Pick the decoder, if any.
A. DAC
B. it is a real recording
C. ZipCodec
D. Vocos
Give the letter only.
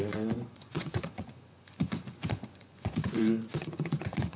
D